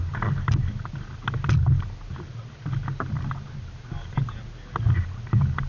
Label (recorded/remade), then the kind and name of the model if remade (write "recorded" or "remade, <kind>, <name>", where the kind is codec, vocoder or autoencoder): recorded